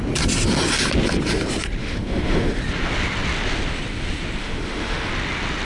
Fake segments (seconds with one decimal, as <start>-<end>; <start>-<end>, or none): 1.8-2.6; 4.4-5.1